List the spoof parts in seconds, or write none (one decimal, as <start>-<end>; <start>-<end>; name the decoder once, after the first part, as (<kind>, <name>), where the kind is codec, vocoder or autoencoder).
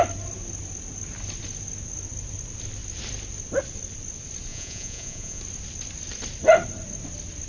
4.5-5.4 (vocoder, Vocos)